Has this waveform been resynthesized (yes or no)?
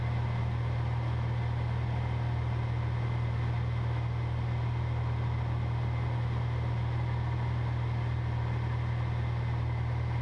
no